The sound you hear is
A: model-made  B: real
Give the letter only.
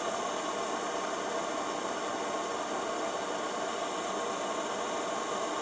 B